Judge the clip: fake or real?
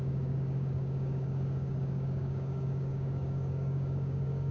fake